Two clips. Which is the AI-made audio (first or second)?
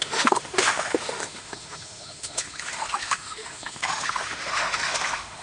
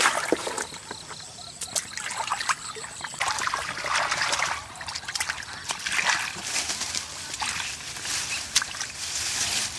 first